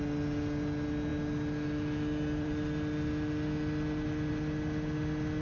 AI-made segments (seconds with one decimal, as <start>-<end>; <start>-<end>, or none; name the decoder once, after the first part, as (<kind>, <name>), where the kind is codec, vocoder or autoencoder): none